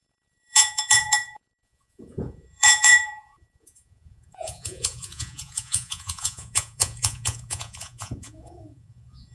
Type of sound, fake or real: fake